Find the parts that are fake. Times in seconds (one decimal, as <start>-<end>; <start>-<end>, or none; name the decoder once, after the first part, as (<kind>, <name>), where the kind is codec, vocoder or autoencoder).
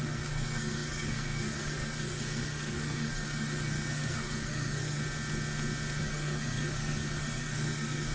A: 0.0-5.0 (codec, SNAC); 6.0-8.1